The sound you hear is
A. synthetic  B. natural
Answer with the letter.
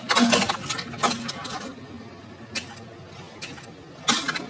B